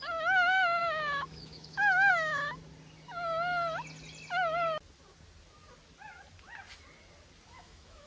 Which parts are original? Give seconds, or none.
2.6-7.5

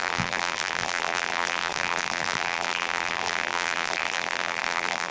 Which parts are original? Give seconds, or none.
none

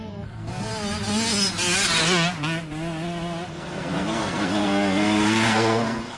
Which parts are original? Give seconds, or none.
0.7-3.5

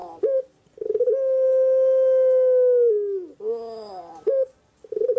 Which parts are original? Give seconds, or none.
0.0-5.2